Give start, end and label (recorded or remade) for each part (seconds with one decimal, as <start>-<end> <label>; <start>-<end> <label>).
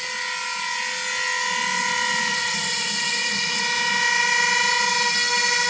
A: 0.0-2.3 recorded; 2.3-3.6 remade; 3.6-5.7 recorded